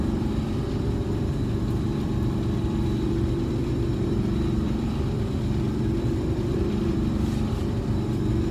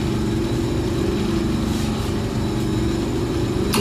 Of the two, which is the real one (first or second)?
second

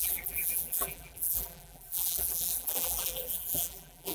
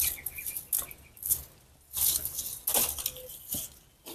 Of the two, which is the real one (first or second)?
second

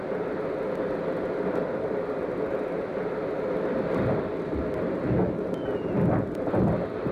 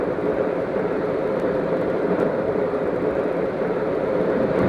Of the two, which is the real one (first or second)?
first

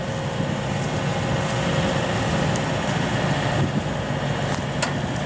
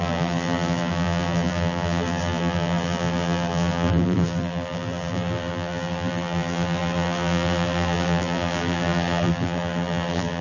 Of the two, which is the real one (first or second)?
first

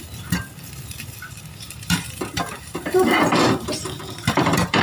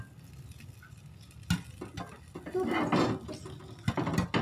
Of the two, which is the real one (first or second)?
second